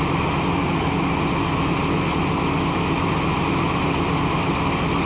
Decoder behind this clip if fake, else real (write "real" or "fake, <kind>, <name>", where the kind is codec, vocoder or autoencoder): real